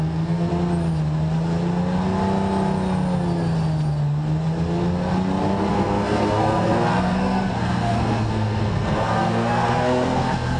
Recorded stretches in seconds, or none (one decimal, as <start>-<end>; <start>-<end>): 0.5-5.7